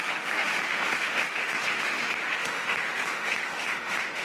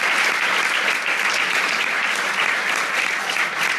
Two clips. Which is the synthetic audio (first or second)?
first